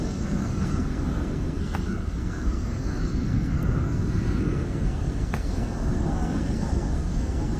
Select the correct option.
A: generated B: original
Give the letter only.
A